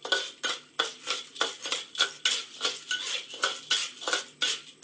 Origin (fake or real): real